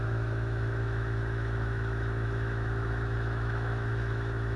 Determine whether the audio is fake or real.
fake